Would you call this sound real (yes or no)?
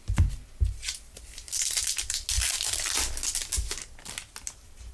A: yes